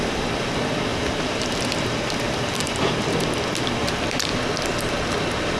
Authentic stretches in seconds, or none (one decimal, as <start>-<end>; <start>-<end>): 0.0-0.9; 2.9-3.8; 4.4-5.6